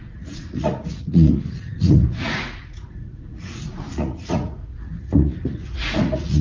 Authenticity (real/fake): fake